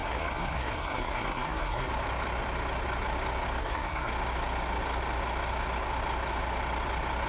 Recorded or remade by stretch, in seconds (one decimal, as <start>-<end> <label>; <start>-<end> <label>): 0.0-1.9 remade; 1.9-3.6 recorded; 3.6-4.1 remade; 4.1-7.3 recorded